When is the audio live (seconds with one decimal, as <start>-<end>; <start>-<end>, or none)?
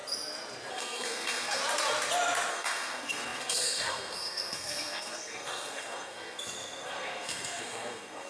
0.0-0.7; 1.6-2.5